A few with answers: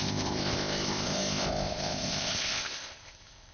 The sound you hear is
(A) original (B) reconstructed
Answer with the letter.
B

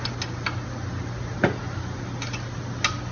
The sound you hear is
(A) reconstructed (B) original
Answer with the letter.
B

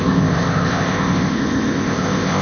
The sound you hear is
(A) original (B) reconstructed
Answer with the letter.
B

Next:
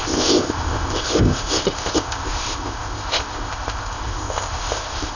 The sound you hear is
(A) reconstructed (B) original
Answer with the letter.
A